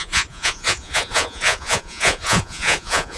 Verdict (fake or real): fake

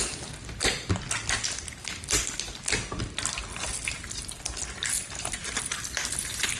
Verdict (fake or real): real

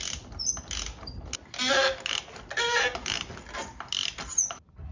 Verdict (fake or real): real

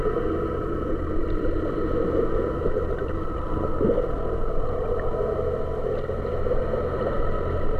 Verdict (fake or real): real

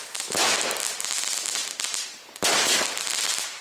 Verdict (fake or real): real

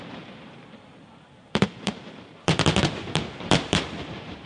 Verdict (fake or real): fake